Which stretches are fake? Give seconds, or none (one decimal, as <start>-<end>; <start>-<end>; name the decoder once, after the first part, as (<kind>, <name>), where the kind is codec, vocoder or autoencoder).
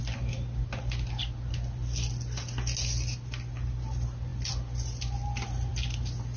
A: none